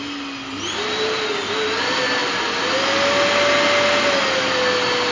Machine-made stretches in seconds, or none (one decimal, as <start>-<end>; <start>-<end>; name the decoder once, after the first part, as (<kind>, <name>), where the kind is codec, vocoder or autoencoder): none